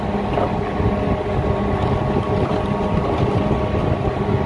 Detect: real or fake real